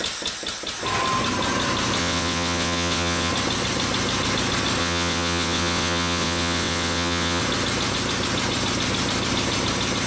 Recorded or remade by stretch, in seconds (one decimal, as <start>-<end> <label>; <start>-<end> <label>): 0.0-2.0 recorded; 2.0-3.3 remade; 3.3-4.8 recorded; 4.8-7.4 remade; 7.4-10.1 recorded

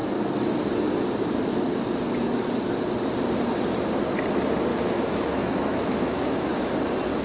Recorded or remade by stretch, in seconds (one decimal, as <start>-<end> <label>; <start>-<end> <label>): 0.0-4.7 recorded; 4.7-6.7 remade; 6.7-7.2 recorded

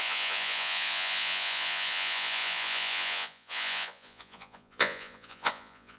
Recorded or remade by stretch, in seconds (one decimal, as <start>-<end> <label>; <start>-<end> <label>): 0.0-6.0 remade

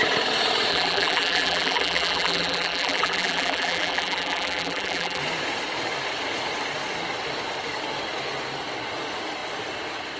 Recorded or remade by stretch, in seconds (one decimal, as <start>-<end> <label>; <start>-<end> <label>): 0.0-0.7 recorded; 0.7-5.2 remade; 5.2-10.2 recorded

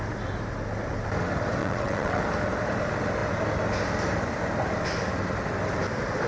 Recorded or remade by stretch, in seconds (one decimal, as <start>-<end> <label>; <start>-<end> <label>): 0.0-1.6 recorded; 1.6-2.2 remade; 2.2-6.3 recorded

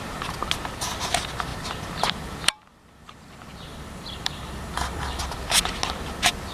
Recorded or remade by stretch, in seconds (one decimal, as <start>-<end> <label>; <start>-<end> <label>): 0.0-3.7 recorded; 3.7-5.2 remade; 5.2-6.5 recorded

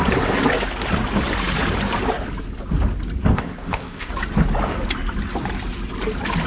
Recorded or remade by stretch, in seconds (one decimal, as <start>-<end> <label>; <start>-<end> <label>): 0.0-3.3 recorded; 3.3-4.1 remade; 4.1-6.5 recorded

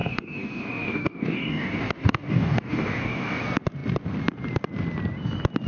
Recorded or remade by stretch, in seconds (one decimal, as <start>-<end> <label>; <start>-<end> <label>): 0.0-3.4 remade; 3.4-5.7 recorded